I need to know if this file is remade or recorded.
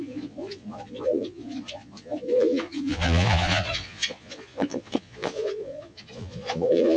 remade